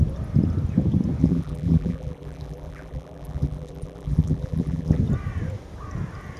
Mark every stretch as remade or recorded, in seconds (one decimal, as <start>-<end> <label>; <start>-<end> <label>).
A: 0.0-1.2 recorded; 1.2-5.0 remade; 5.0-6.4 recorded